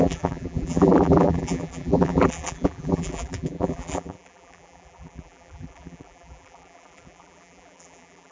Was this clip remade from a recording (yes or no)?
yes